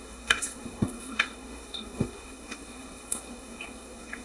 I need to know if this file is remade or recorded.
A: remade